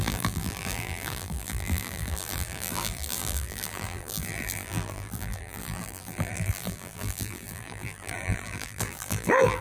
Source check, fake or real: fake